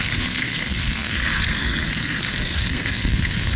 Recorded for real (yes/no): no